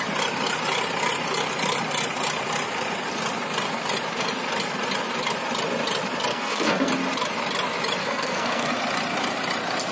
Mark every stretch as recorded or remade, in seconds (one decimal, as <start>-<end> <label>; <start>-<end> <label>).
0.0-6.3 recorded; 6.3-6.9 remade; 6.9-8.0 recorded; 8.0-8.7 remade; 8.7-9.9 recorded